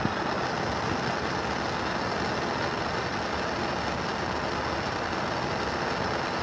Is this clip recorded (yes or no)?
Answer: yes